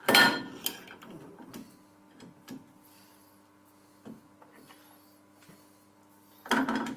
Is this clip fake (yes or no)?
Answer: no